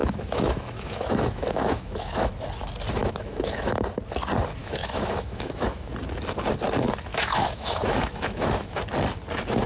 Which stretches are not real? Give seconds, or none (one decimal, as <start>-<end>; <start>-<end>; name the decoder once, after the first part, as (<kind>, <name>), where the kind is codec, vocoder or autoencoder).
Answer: 0.0-2.3 (autoencoder, DAC-VAE); 3.0-3.8; 4.6-5.9; 7.1-8.8